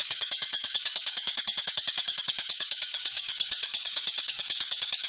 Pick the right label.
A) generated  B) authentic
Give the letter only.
A